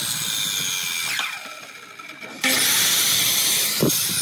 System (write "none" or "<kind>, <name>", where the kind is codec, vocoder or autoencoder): none